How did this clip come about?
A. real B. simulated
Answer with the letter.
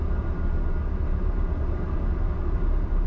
A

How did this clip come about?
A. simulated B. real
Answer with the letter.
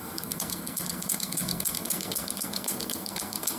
A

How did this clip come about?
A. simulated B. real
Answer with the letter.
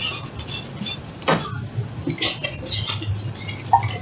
B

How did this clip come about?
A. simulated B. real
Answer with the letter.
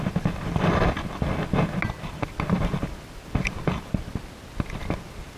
B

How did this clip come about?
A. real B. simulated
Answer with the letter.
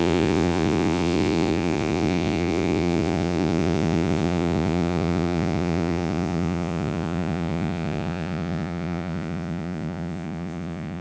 B